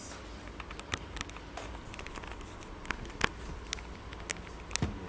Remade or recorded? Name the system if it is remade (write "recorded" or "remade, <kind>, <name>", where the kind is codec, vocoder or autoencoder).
recorded